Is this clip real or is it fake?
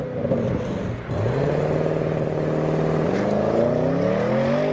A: real